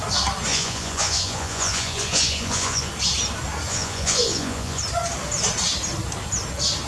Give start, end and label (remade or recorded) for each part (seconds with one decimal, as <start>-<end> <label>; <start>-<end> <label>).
0.0-0.5 recorded; 0.5-2.9 remade; 2.9-3.7 recorded; 3.7-4.8 remade; 4.8-6.9 recorded